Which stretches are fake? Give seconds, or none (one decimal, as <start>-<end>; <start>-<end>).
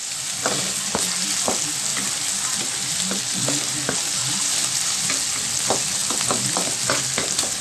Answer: 4.2-5.1